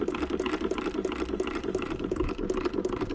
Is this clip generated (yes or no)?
no